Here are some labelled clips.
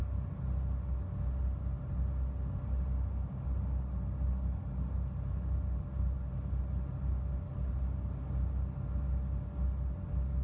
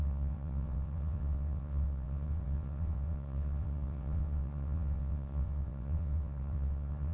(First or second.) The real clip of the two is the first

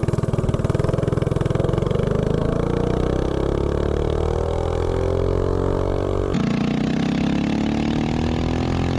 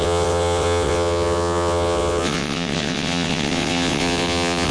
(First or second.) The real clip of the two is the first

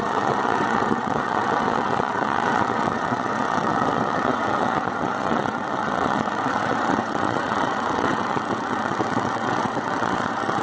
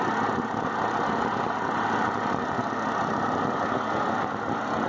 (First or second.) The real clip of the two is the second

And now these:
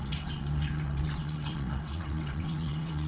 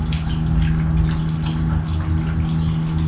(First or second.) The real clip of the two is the second